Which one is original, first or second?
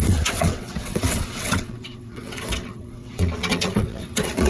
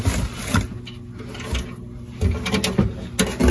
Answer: second